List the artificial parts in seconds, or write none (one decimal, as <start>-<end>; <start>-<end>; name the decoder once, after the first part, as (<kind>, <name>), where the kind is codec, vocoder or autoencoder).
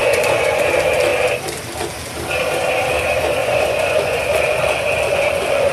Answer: 0.0-0.7 (vocoder, Vocos); 3.4-5.7